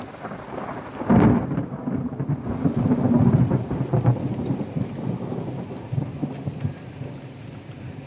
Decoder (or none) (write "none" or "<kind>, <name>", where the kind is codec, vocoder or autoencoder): none